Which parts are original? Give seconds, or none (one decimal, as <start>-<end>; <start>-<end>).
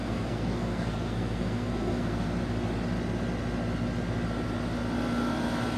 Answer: 2.3-5.8